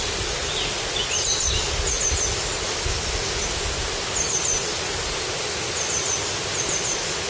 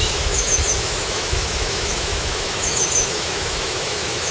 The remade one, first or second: second